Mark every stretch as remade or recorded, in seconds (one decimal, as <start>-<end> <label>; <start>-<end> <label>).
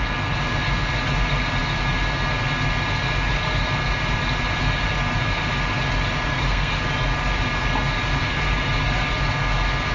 0.0-6.3 recorded; 6.3-6.8 remade; 6.8-9.9 recorded